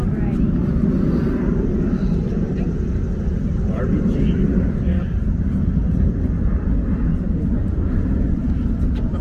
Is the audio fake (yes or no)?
yes